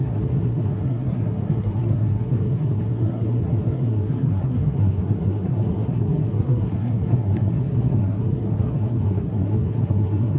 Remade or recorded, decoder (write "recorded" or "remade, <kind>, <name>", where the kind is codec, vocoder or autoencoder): remade, codec, SNAC